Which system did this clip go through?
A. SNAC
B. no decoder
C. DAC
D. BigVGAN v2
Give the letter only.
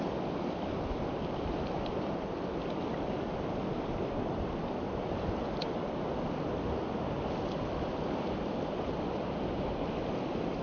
B